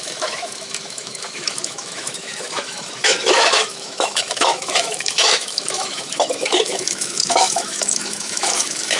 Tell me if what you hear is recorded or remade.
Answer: remade